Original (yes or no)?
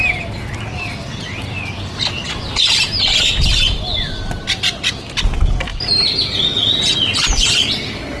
yes